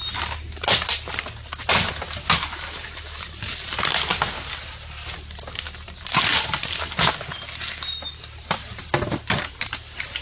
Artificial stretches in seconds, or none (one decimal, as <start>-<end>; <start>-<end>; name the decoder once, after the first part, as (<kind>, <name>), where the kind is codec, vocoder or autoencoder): none